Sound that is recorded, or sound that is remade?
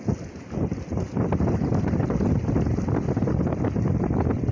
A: recorded